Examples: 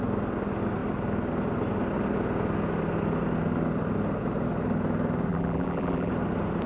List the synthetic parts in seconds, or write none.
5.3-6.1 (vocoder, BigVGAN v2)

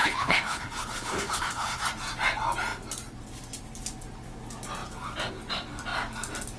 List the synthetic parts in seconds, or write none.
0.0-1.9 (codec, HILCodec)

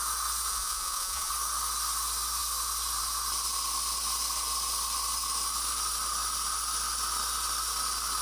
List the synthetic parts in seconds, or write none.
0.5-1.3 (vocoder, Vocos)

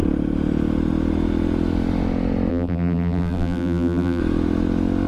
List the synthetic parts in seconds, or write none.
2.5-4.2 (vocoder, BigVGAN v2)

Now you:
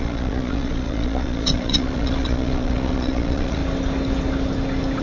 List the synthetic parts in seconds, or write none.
0.0-3.6 (vocoder, Vocos)

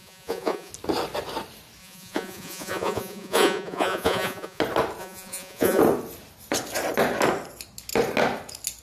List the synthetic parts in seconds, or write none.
0.0-0.7 (vocoder, Vocos); 1.8-4.6; 5.0-5.8

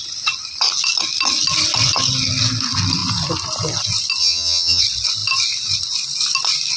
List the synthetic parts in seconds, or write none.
4.2-4.8 (vocoder, HiFi-GAN)